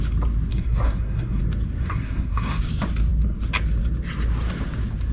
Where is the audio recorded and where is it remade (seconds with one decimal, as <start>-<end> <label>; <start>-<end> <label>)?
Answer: 0.0-0.5 recorded; 0.5-1.4 remade; 1.4-1.8 recorded; 1.8-2.6 remade; 2.6-5.1 recorded